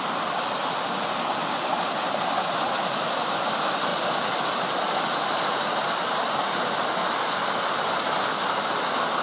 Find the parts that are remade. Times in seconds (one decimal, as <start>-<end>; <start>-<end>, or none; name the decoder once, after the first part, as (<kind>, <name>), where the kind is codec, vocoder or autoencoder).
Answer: none

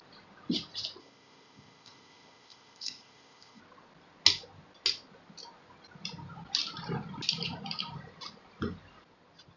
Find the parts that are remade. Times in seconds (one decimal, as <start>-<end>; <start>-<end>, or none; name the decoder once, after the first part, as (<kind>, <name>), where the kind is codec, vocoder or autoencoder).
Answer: 1.0-3.6 (codec, ZipCodec)

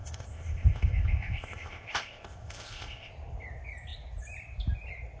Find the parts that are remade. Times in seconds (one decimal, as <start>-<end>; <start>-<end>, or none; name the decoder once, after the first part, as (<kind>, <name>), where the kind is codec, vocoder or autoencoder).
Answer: 0.0-3.1 (codec, ZipCodec)

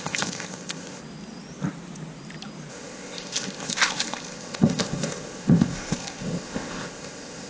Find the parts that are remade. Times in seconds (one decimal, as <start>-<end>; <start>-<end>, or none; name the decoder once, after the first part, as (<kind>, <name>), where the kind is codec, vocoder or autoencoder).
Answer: 0.0-1.0 (codec, ZipCodec); 2.7-7.5

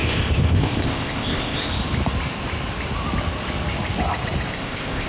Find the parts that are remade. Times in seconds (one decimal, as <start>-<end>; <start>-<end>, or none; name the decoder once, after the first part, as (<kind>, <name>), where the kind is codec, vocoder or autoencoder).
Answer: 0.0-1.7 (codec, ZipCodec); 4.5-5.1

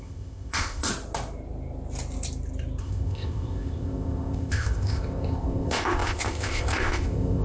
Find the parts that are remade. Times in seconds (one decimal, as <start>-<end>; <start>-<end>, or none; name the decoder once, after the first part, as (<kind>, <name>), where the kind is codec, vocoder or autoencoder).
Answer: 0.0-0.9 (codec, ZipCodec); 2.8-7.4